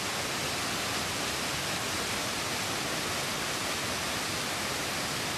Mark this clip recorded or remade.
recorded